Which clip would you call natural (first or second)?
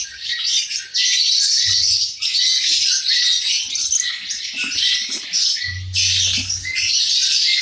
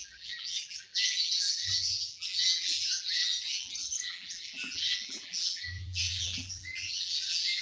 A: first